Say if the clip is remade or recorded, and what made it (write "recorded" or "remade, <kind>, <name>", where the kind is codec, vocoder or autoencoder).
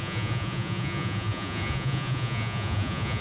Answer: remade, vocoder, Vocos